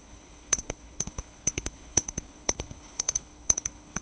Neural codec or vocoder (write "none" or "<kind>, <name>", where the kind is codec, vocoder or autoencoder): codec, HILCodec